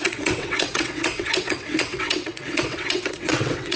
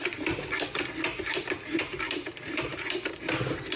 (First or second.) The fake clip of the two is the first